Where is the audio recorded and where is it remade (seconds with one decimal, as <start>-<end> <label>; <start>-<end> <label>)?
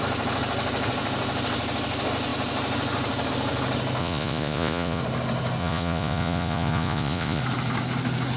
0.0-4.0 recorded; 4.0-5.0 remade; 5.0-5.6 recorded; 5.6-7.4 remade; 7.4-8.4 recorded